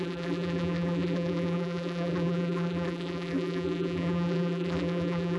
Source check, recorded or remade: remade